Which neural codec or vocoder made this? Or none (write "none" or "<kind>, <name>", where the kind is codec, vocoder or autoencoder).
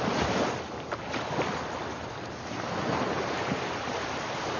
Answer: none